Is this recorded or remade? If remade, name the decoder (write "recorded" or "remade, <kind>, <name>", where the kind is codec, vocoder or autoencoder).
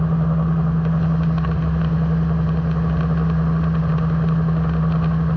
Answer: recorded